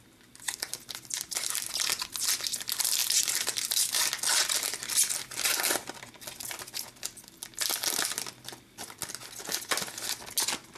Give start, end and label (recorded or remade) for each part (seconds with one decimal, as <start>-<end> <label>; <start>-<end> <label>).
0.0-3.0 recorded; 3.0-4.1 remade; 4.1-10.8 recorded